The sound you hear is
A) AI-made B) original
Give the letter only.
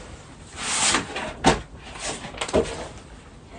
B